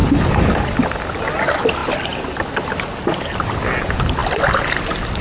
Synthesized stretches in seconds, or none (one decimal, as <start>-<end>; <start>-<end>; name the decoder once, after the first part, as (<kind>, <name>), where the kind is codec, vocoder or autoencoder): 0.0-1.3 (vocoder, BigVGAN v2); 4.2-5.2